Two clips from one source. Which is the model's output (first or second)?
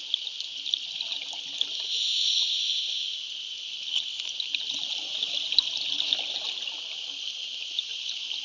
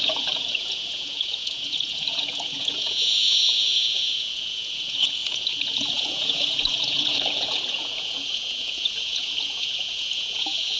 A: second